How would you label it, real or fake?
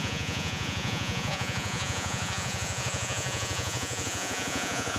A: fake